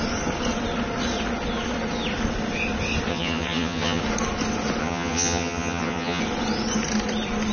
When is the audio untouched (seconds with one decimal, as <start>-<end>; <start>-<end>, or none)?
0.0-3.1; 4.0-4.8; 6.2-7.5